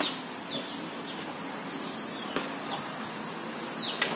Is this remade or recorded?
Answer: recorded